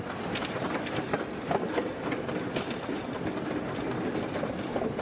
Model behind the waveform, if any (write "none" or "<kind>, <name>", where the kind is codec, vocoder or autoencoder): none